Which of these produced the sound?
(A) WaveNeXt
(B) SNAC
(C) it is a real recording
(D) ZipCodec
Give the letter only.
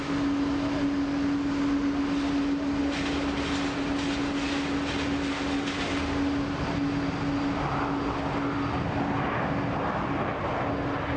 C